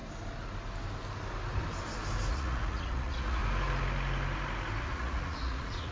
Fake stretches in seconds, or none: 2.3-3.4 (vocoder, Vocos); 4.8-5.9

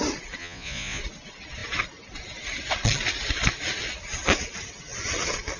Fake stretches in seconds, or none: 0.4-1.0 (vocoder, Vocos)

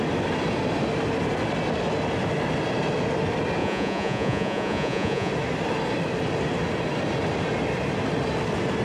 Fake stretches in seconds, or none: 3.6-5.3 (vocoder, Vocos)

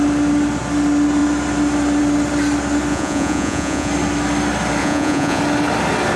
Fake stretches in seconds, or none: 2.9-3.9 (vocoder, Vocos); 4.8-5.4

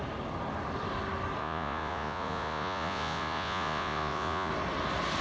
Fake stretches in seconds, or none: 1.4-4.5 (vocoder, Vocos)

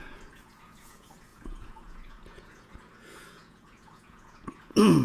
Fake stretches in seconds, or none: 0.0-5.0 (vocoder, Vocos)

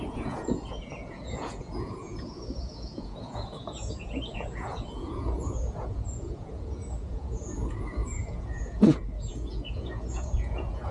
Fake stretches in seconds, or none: 0.0-10.9 (vocoder, Vocos)

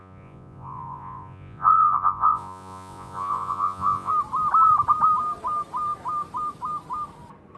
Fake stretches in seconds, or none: 0.0-4.1 (vocoder, Vocos)